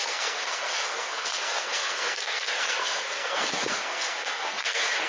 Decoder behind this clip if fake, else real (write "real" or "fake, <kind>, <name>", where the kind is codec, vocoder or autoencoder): fake, codec, SNAC